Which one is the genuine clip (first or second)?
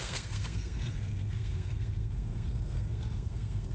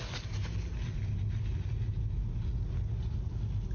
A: second